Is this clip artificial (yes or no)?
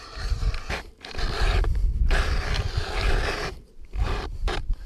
no